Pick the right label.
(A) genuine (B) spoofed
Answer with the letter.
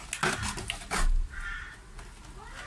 A